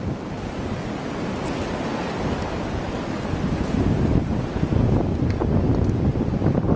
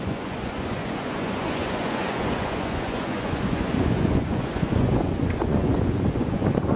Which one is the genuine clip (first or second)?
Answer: first